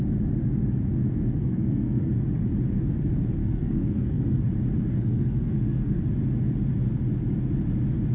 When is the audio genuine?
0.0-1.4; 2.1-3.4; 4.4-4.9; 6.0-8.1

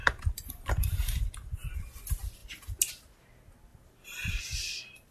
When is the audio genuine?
1.8-3.7; 4.4-5.1

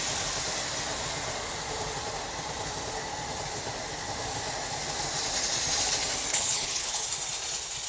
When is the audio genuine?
0.0-6.3; 7.1-7.9

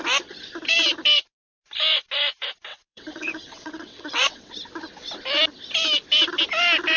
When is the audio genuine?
0.0-2.7; 4.5-7.0

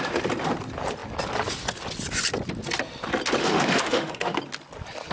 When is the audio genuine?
0.0-3.4; 4.4-5.1

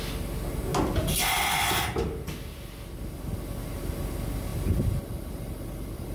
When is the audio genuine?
0.0-6.1

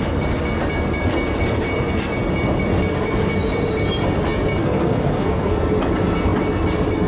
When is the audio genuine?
0.0-4.6; 5.5-7.1